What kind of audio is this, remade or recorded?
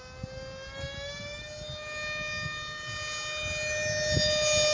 recorded